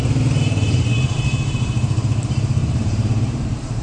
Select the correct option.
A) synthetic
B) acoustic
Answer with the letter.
A